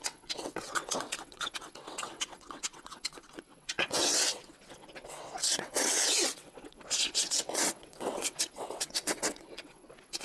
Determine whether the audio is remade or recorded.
remade